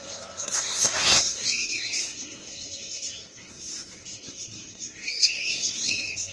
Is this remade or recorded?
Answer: remade